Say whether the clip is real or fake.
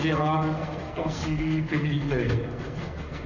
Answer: fake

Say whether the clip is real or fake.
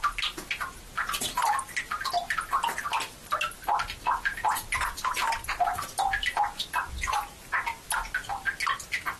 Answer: real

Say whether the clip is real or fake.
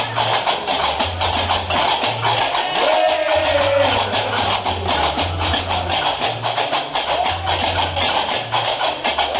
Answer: real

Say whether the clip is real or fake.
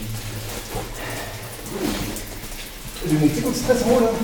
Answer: real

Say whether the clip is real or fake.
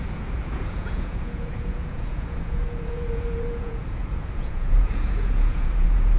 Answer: fake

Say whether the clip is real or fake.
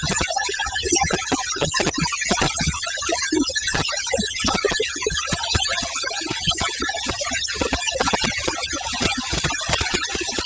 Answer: fake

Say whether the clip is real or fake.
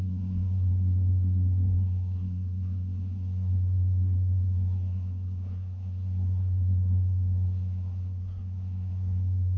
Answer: fake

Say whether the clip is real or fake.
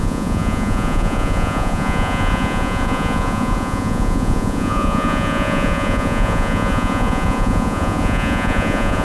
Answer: fake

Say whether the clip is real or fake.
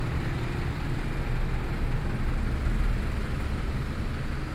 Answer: real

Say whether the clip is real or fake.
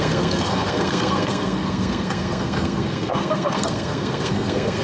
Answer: fake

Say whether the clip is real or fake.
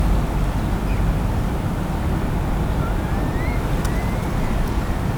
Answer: real